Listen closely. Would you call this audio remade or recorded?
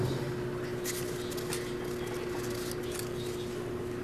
recorded